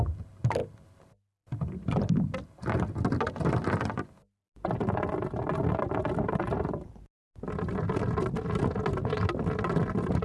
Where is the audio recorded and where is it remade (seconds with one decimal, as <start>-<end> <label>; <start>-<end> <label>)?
0.0-10.2 recorded